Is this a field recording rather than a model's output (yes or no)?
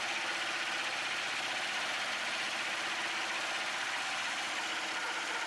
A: yes